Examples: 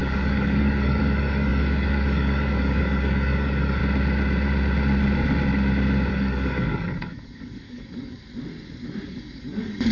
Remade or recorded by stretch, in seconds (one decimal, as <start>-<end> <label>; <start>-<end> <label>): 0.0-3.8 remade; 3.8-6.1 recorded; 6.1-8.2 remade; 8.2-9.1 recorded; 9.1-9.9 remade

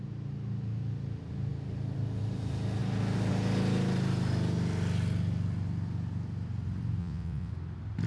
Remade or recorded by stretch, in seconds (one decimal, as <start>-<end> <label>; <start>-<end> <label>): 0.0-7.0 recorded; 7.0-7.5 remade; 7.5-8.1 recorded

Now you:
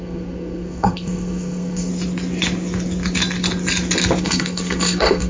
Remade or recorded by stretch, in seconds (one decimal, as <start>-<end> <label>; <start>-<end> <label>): 0.0-1.9 remade; 1.9-4.2 recorded; 4.2-5.3 remade

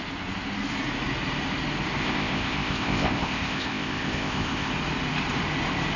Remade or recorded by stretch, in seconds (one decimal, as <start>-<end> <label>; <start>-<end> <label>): 0.0-2.0 recorded; 2.0-4.7 remade; 4.7-6.0 recorded